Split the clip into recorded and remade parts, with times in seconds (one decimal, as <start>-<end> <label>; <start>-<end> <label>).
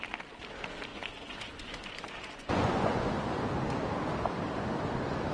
0.0-0.9 recorded; 0.9-3.5 remade; 3.5-5.3 recorded